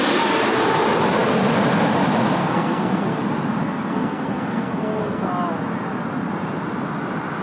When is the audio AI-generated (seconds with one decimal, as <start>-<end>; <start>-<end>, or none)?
2.4-3.2; 3.6-5.3